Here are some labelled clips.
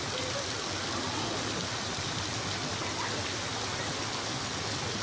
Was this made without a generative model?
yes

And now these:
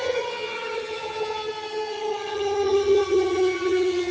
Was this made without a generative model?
no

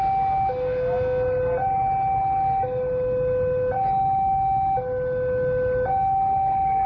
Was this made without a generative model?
yes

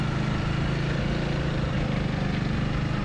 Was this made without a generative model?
yes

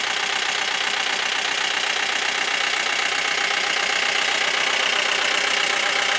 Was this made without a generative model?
yes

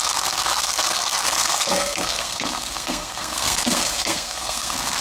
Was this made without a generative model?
no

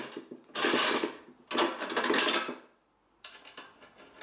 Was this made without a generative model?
yes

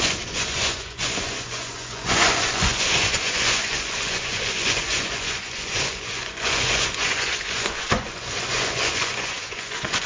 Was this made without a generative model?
no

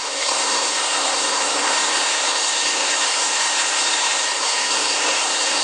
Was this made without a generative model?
no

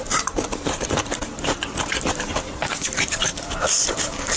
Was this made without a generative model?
no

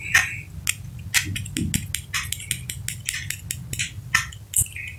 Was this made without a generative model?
yes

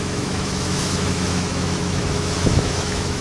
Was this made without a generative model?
no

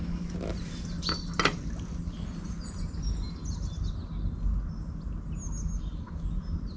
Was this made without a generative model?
yes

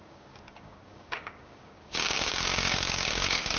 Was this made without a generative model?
no